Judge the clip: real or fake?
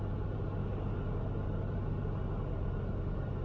real